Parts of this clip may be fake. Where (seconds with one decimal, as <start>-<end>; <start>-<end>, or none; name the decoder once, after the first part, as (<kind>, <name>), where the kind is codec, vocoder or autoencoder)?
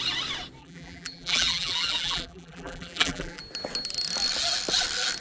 0.6-3.4 (vocoder, BigVGAN v2)